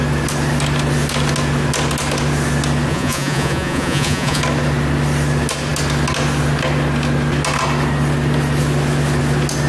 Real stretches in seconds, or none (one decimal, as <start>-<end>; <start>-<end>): 0.0-2.9; 4.4-9.7